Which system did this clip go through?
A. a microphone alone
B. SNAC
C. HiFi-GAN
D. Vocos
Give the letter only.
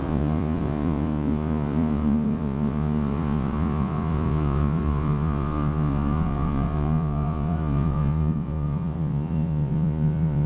D